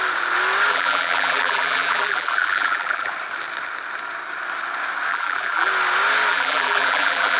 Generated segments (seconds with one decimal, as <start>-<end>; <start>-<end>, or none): 0.7-3.1; 5.1-5.7; 6.3-7.4